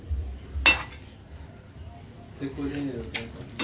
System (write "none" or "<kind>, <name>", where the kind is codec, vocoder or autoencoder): none